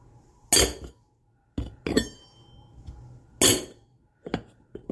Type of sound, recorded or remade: recorded